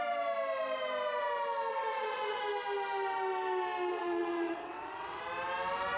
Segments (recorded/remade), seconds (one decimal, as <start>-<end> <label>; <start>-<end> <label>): 0.0-1.7 recorded; 1.7-2.4 remade; 2.4-3.9 recorded; 3.9-5.2 remade; 5.2-6.0 recorded